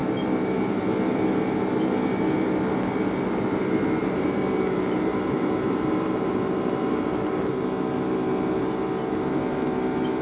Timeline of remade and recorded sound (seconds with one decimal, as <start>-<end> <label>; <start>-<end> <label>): 0.0-4.0 recorded; 4.0-7.5 remade; 7.5-10.2 recorded